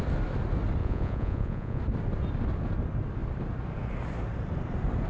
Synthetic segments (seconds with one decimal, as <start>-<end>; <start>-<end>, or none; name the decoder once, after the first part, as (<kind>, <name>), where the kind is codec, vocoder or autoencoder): 0.8-1.8 (vocoder, Vocos)